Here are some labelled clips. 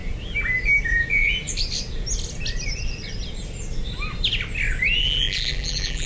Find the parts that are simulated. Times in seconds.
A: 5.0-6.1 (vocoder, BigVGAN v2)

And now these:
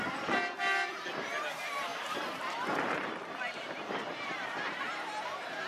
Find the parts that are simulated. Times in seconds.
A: 1.9-4.8 (vocoder, BigVGAN v2)

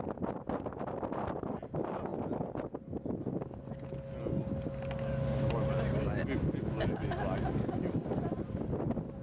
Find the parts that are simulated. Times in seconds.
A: none

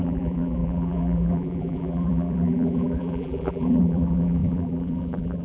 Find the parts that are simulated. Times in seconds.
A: 0.0-5.4 (vocoder, BigVGAN v2)

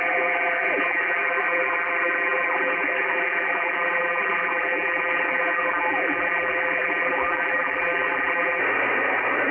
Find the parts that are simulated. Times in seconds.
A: 0.0-8.6 (vocoder, BigVGAN v2)

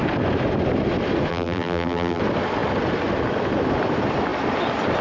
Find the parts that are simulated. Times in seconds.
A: 1.3-2.2 (vocoder, BigVGAN v2)

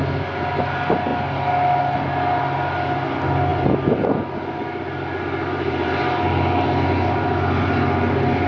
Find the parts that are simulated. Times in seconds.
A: 5.4-6.2 (vocoder, BigVGAN v2)